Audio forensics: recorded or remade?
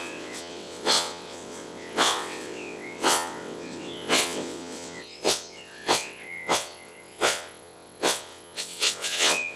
remade